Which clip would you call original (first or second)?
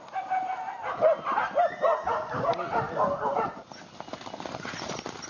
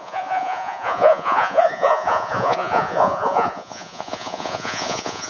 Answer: first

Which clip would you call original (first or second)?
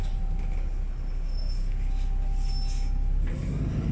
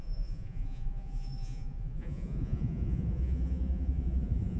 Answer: first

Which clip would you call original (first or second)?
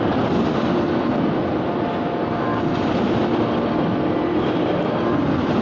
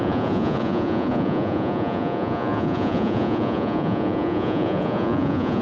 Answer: first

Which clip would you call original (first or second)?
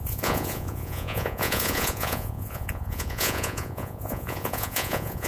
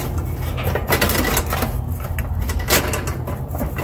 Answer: second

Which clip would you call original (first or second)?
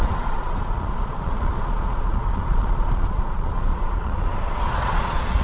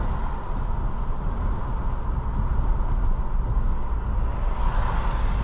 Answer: second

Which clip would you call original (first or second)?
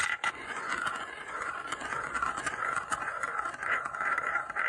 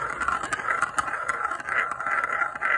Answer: second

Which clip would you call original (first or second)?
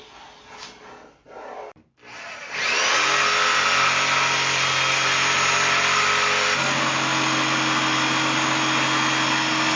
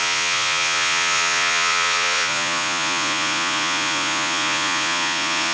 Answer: first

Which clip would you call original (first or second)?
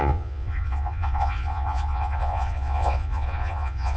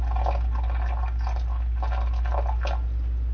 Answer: second